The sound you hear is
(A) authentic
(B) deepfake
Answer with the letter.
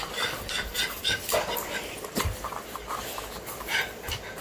A